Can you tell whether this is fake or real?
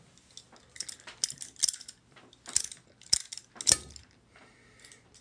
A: real